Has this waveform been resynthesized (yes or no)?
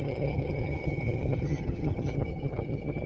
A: yes